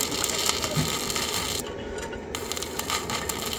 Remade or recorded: recorded